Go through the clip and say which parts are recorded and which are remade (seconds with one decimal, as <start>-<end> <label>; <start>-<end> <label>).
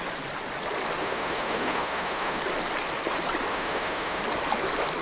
0.0-1.0 recorded; 1.0-2.4 remade; 2.4-3.5 recorded; 3.5-4.2 remade; 4.2-5.0 recorded